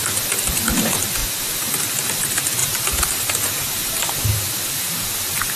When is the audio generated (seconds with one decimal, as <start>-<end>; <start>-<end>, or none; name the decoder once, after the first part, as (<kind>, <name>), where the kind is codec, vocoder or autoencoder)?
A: 2.6-4.2 (vocoder, BigVGAN v2)